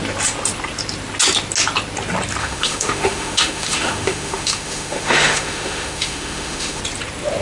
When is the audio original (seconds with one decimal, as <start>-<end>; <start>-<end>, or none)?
0.0-2.4; 6.8-7.4